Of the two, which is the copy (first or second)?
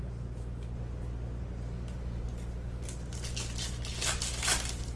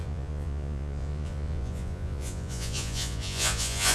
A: second